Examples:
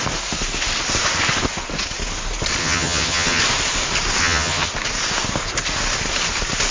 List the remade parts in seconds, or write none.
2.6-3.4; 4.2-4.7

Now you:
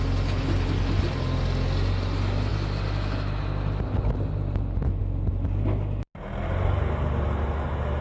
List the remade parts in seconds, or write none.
none

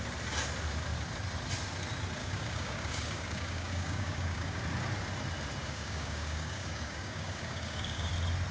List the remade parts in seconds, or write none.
2.2-4.6; 5.6-8.1

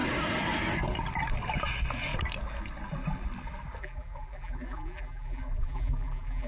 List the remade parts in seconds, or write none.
3.8-6.5

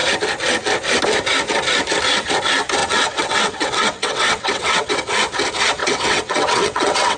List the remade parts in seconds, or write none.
2.8-4.9; 5.8-7.2

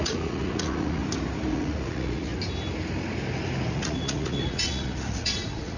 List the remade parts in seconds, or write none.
0.0-1.0; 1.5-2.3; 3.6-5.8

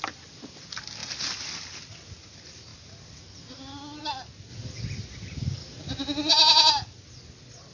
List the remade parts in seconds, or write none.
none